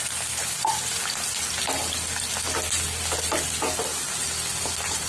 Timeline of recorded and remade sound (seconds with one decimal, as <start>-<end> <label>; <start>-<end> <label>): 0.0-5.1 recorded